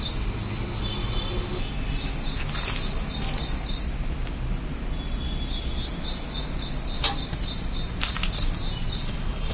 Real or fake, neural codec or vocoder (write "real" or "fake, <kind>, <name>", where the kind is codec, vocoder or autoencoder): real